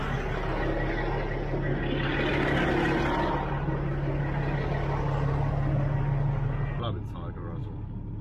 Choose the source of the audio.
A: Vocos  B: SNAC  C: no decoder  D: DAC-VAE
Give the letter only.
C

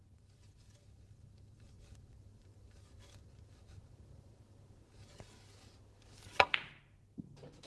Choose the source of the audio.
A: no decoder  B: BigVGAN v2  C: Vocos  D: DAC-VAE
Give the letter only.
A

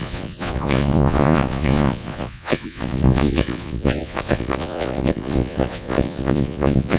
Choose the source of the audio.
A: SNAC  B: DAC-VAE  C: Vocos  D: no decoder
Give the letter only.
C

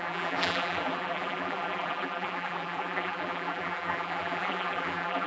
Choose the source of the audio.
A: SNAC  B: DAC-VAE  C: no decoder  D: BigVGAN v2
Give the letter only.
D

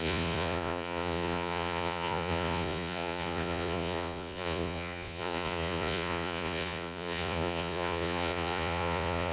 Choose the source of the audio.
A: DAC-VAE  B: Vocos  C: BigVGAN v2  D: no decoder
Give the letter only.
B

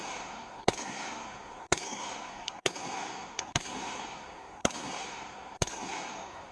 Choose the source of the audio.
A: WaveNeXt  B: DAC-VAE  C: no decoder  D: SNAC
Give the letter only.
D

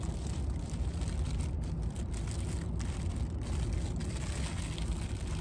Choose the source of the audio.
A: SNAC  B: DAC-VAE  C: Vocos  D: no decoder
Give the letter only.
D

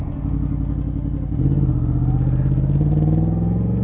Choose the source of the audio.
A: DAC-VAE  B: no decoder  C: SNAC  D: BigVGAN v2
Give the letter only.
B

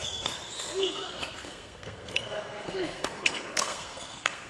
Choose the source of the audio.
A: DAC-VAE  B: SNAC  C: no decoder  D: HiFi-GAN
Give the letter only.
B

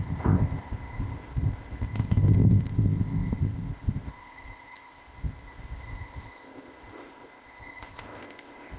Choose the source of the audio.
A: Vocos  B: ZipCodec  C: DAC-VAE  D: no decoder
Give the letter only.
B